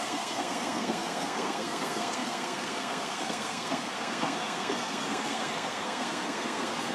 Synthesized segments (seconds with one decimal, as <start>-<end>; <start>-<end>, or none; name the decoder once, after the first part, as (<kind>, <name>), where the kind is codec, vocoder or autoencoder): 0.0-6.9 (codec, SNAC)